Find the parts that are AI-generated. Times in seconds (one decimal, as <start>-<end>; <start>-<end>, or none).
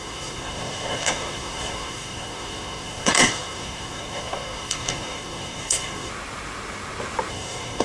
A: 0.0-6.1; 7.3-7.8